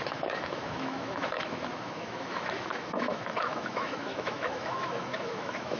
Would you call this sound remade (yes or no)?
yes